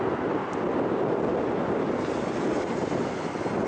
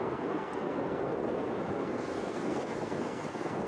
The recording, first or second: first